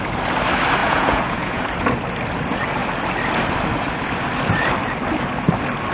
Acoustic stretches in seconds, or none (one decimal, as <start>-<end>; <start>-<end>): 0.0-0.8; 1.6-5.9